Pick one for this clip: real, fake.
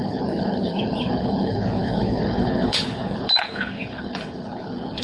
fake